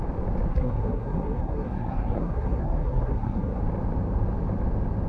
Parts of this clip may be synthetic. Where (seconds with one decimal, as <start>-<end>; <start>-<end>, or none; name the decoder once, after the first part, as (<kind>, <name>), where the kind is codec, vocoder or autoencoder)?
0.5-3.6 (codec, SNAC)